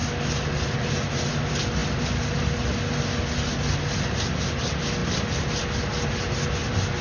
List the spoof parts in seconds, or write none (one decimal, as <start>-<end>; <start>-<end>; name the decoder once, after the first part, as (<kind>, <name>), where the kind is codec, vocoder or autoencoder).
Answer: none

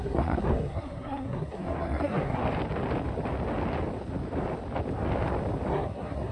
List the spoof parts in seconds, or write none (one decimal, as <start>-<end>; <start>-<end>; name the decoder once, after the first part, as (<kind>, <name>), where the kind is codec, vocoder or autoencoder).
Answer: 0.0-2.4 (codec, SNAC); 5.7-6.3

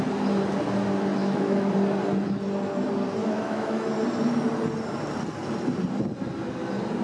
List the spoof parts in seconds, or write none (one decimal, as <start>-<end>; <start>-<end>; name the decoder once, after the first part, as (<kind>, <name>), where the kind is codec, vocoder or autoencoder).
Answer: 1.2-1.7 (autoencoder, DAC-VAE); 3.2-3.9

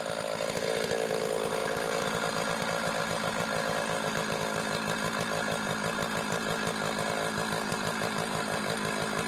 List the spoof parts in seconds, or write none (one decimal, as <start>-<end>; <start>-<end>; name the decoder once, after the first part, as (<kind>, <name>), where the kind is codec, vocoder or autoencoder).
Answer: 1.6-4.4 (vocoder, BigVGAN v2); 7.7-8.6

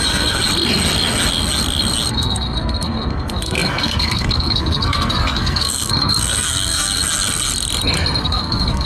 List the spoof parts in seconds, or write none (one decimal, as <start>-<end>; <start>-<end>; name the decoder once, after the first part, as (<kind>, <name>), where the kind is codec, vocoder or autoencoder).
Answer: 0.0-0.4 (codec, SNAC); 2.1-7.0; 8.2-8.9